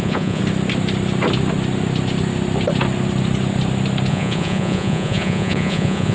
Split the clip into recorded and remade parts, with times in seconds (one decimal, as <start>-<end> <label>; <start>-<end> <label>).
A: 0.0-0.4 remade; 0.4-4.1 recorded; 4.1-6.1 remade